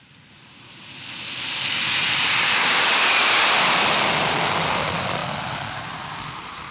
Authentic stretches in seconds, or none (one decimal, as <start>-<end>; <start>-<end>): 5.2-5.8

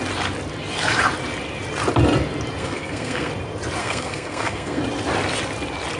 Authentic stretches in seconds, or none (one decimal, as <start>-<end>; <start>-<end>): 0.0-2.6; 3.3-3.8; 4.8-6.0

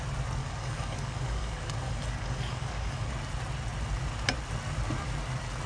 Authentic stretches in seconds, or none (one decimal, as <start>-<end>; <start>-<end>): 0.0-0.4; 3.1-5.7

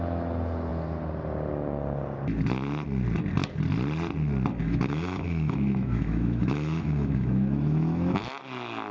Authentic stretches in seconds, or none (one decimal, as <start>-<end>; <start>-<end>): 0.0-4.6; 8.2-8.9

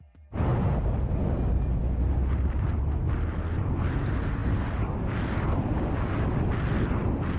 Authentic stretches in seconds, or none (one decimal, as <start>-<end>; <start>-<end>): 0.0-1.8; 2.7-7.4